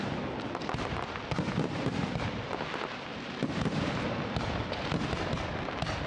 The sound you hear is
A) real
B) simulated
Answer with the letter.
A